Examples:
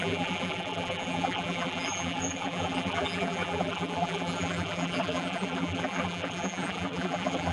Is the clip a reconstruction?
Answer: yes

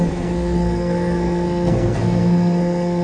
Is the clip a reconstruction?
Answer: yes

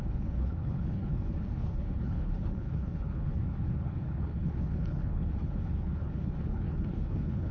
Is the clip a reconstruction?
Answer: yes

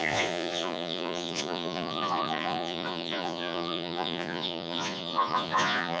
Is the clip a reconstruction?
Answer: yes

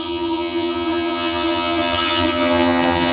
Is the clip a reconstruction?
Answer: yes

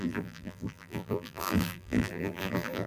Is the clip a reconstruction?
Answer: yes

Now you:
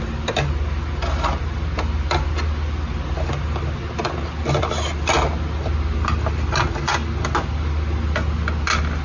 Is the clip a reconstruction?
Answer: no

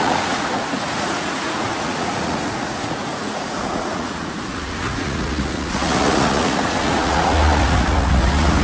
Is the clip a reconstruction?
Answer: yes